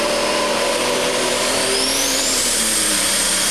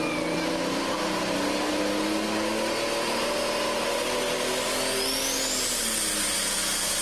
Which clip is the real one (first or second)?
second